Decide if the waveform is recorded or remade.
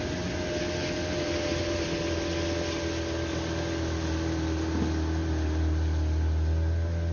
recorded